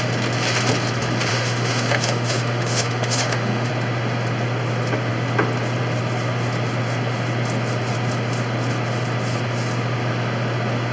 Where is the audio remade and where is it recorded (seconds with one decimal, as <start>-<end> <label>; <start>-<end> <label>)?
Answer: 0.0-1.3 recorded; 1.3-3.7 remade; 3.7-10.9 recorded